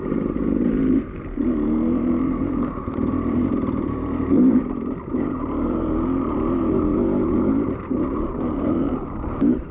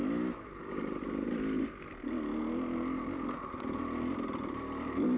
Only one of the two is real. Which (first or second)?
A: second